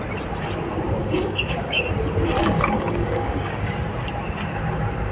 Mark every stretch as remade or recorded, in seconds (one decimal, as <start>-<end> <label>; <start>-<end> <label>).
0.0-1.0 recorded; 1.0-1.8 remade; 1.8-2.4 recorded; 2.4-3.7 remade; 3.7-5.1 recorded